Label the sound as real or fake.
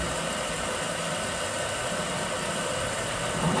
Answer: real